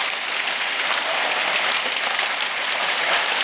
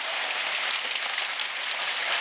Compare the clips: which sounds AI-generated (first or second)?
first